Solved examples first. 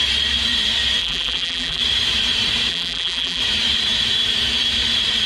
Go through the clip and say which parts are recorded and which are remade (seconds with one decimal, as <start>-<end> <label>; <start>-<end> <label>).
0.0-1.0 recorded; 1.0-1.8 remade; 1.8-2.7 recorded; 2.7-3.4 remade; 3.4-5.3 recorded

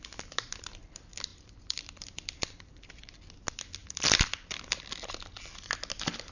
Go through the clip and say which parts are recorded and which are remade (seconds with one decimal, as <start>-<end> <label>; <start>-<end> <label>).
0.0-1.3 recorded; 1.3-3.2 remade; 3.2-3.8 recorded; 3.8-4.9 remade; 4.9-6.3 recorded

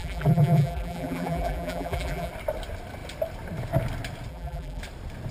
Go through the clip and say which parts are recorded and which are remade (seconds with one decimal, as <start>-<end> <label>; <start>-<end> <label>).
0.0-2.3 remade; 2.3-4.3 recorded; 4.3-4.8 remade; 4.8-5.3 recorded

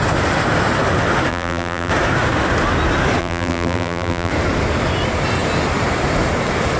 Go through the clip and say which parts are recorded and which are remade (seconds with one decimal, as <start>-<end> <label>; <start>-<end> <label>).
0.0-1.3 recorded; 1.3-1.9 remade; 1.9-3.2 recorded; 3.2-4.3 remade; 4.3-6.8 recorded

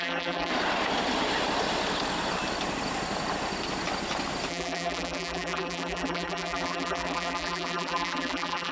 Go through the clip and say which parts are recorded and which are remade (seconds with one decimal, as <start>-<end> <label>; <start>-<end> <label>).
0.0-0.5 remade; 0.5-4.5 recorded; 4.5-8.7 remade

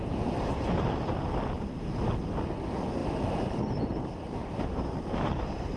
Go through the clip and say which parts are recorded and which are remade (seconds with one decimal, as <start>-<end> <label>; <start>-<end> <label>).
0.0-3.0 recorded; 3.0-4.0 remade; 4.0-4.4 recorded; 4.4-5.8 remade

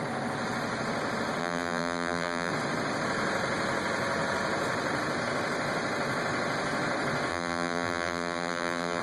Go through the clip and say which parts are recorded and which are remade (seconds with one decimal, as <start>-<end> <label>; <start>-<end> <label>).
0.0-1.4 recorded; 1.4-2.5 remade; 2.5-7.3 recorded; 7.3-9.0 remade